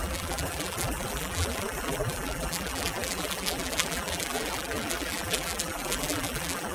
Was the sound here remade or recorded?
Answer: remade